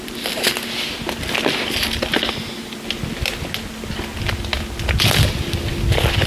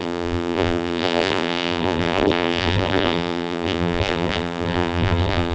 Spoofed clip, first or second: second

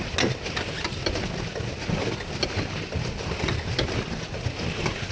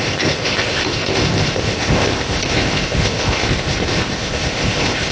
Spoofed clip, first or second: second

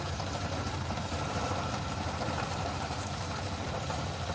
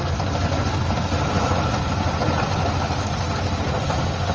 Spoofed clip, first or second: first